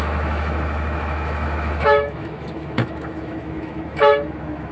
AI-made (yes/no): yes